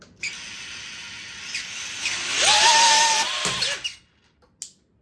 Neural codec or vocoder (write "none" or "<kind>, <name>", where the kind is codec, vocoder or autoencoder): none